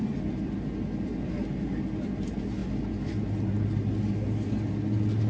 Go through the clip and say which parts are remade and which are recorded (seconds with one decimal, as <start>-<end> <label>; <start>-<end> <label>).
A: 0.0-5.3 recorded